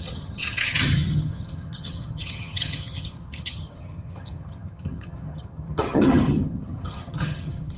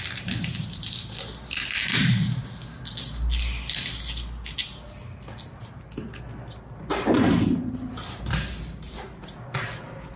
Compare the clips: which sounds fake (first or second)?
first